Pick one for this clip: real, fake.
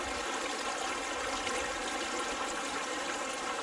real